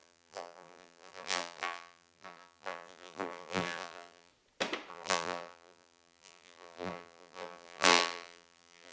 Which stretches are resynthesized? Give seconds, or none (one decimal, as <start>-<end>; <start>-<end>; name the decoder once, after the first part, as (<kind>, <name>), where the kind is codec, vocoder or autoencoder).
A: 0.0-4.3 (vocoder, BigVGAN v2); 4.9-8.9